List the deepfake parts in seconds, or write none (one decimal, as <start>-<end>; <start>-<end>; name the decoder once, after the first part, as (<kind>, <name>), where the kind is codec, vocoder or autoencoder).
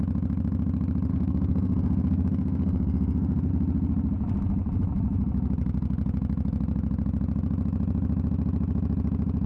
1.1-3.5 (codec, SNAC)